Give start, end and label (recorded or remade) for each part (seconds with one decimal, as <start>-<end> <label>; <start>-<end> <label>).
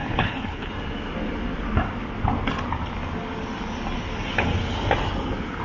0.0-0.7 remade; 0.7-5.6 recorded